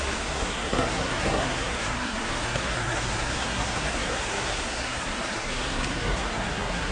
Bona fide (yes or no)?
no